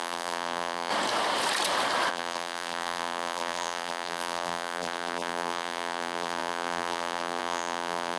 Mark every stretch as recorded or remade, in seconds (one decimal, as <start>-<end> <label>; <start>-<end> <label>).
0.0-0.9 remade; 0.9-2.1 recorded; 2.1-8.2 remade